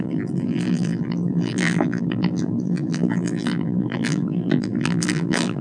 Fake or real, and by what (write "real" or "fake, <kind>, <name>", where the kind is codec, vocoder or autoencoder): fake, vocoder, BigVGAN v2